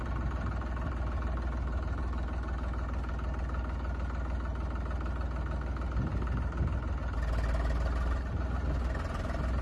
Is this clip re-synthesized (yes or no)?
no